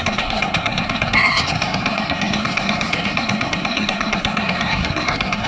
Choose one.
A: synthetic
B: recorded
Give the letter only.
A